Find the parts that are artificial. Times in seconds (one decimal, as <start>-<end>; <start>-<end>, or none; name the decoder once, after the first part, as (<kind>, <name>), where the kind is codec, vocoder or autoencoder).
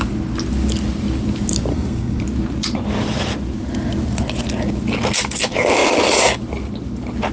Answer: 1.7-2.2 (codec, SNAC)